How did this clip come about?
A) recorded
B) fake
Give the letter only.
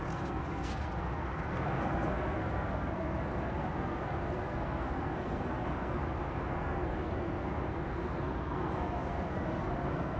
B